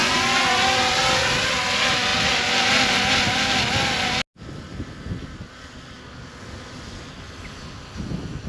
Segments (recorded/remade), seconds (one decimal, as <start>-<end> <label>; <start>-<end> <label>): 0.0-0.6 remade; 0.6-8.5 recorded